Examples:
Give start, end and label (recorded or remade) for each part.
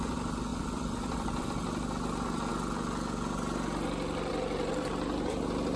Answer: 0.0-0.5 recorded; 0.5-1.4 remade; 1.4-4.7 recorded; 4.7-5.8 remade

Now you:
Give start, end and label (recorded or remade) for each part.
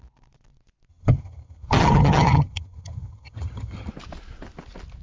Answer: 0.0-0.9 recorded; 0.9-3.9 remade; 3.9-5.0 recorded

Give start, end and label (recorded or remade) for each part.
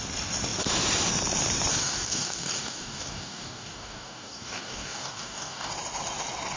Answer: 0.0-1.7 recorded; 1.7-5.7 remade; 5.7-6.6 recorded